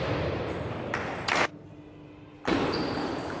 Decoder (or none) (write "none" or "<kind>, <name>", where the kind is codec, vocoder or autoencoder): none